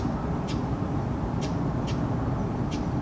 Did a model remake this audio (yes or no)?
no